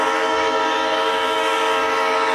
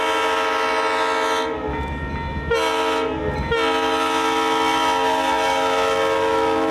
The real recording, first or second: second